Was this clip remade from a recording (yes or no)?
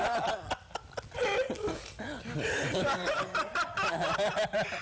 no